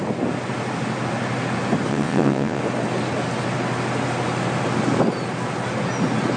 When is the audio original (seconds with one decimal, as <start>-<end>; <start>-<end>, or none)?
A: 0.0-1.9; 2.6-6.4